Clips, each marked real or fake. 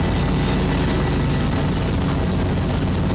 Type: real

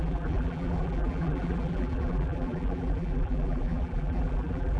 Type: fake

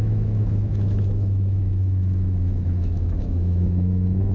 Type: fake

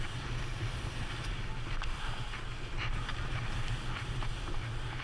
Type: real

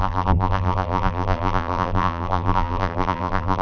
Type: fake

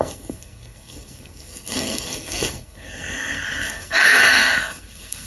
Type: fake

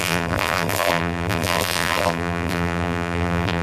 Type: fake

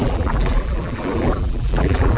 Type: fake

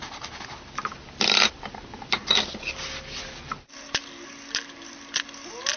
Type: fake